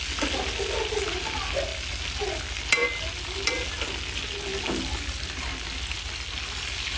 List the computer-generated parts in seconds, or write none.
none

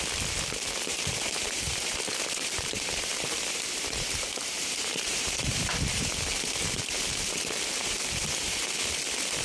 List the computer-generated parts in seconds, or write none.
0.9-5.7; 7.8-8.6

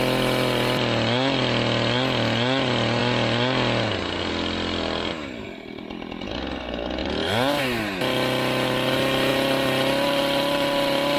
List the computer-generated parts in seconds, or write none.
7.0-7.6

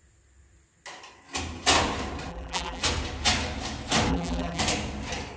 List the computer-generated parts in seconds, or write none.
2.3-2.8; 4.1-4.6

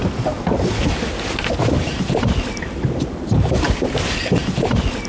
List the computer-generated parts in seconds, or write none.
none

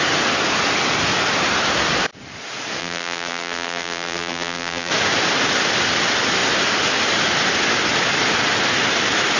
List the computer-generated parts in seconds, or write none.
2.8-4.9